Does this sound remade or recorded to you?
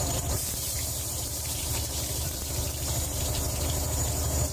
remade